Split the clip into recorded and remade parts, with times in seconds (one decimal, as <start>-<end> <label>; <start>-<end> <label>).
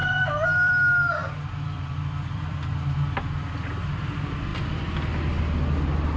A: 0.0-0.7 remade; 0.7-1.2 recorded; 1.2-2.8 remade; 2.8-6.2 recorded